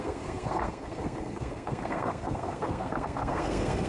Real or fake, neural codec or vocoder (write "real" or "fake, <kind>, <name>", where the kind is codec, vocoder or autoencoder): fake, codec, SNAC